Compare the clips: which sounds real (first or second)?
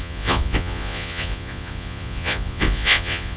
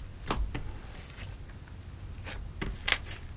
second